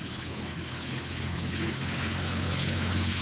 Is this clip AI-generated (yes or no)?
yes